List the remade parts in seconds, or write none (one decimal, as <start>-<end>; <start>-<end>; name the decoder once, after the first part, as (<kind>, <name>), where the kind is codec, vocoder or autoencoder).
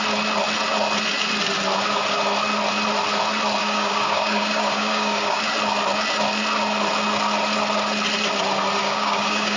3.6-5.4 (codec, DAC); 8.8-9.6